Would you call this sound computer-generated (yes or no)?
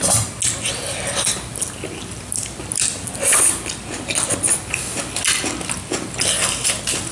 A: no